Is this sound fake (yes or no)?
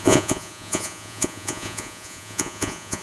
yes